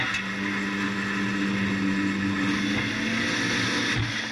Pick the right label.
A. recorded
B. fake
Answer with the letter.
A